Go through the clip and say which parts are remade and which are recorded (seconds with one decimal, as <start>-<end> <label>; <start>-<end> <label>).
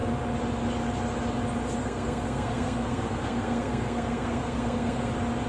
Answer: 0.0-1.8 recorded; 1.8-5.1 remade; 5.1-5.5 recorded